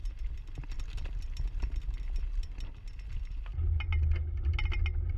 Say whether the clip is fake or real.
real